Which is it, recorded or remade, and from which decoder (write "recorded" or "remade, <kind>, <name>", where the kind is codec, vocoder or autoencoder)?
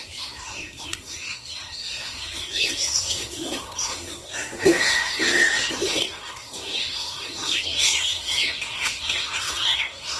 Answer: remade, codec, SNAC